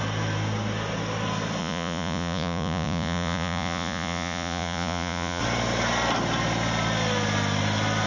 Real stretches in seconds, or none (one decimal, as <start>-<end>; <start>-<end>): 0.0-1.6; 5.4-8.1